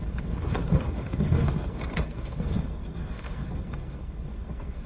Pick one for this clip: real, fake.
fake